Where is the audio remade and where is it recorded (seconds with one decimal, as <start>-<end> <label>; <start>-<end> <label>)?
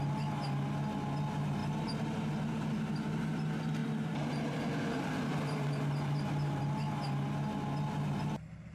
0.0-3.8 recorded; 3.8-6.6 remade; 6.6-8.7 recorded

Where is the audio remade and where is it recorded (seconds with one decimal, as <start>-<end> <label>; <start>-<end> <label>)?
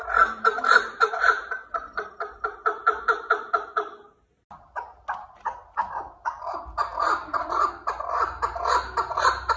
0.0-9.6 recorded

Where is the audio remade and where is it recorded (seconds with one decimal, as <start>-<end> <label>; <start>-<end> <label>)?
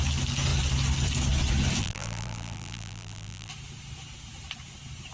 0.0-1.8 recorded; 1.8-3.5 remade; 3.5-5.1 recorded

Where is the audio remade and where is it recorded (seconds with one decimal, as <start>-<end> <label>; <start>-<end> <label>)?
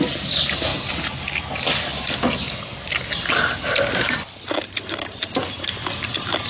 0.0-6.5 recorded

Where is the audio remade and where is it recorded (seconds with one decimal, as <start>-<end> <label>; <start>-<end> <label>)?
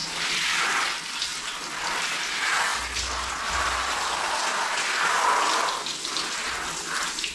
0.0-7.3 recorded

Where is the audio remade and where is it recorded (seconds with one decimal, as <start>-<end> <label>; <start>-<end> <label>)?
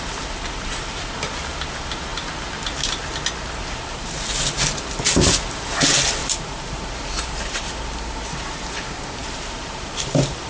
0.0-6.2 recorded; 6.2-7.5 remade; 7.5-9.2 recorded; 9.2-10.5 remade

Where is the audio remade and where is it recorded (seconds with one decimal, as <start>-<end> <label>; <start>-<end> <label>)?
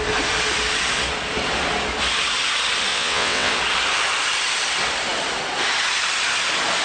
0.0-2.9 recorded; 2.9-3.5 remade; 3.5-6.8 recorded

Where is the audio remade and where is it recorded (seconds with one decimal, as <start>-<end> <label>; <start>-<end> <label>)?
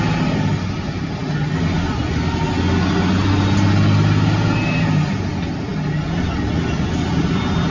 0.0-7.7 recorded